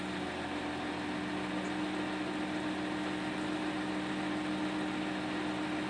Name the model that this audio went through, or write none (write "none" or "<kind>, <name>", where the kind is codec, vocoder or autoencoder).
none